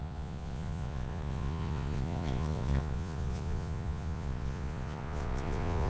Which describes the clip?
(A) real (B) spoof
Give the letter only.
B